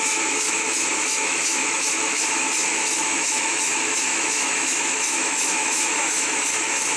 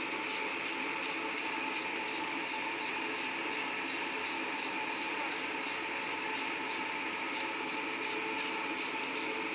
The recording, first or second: second